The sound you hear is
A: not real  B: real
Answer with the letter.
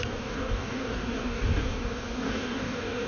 A